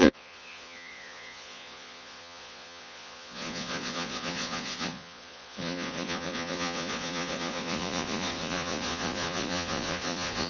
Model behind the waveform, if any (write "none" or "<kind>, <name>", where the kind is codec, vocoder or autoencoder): vocoder, Vocos